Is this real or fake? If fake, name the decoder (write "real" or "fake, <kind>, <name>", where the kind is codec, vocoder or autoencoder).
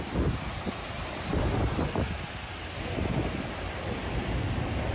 real